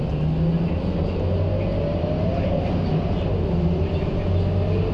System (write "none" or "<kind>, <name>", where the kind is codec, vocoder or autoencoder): none